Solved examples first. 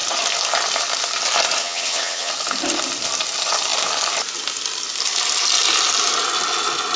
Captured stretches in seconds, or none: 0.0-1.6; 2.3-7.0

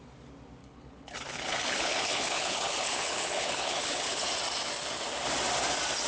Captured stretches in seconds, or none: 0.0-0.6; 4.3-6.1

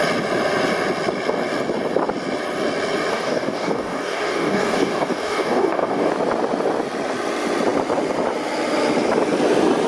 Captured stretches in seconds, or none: 0.0-3.1; 6.1-9.9